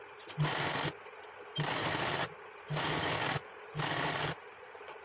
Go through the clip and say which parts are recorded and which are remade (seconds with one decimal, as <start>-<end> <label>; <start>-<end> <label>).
0.0-5.0 recorded